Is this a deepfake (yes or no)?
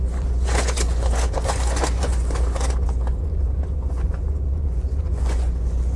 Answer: yes